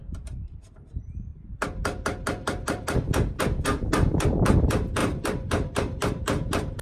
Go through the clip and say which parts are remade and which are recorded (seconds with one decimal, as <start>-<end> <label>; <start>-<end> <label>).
0.0-5.0 recorded; 5.0-6.8 remade